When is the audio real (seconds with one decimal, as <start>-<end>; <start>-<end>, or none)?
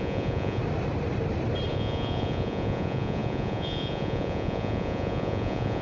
0.6-1.7